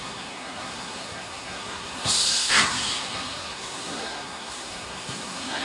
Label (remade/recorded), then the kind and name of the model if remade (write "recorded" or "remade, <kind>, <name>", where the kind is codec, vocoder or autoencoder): remade, codec, SNAC